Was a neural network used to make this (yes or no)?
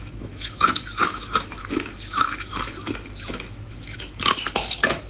yes